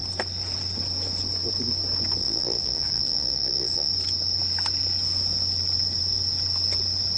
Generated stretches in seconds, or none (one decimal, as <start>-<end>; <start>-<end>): 2.2-3.9